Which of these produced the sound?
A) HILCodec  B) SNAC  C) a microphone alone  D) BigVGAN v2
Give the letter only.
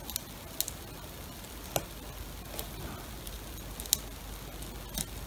C